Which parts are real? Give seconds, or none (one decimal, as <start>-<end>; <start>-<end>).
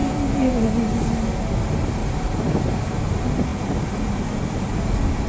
0.0-2.0; 3.0-3.5